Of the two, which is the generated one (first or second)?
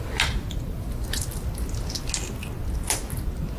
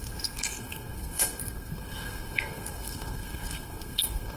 second